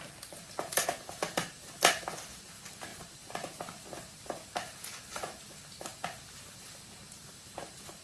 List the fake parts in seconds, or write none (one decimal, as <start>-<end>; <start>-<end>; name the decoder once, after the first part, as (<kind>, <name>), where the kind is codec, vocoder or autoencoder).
none